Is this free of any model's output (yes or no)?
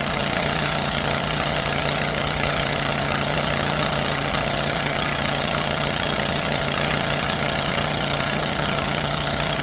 no